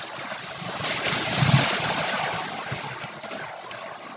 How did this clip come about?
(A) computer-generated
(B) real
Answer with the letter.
B